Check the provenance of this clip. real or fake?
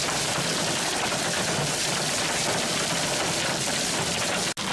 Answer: real